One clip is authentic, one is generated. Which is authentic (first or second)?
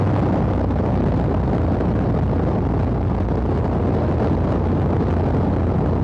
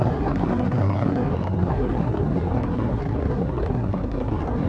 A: first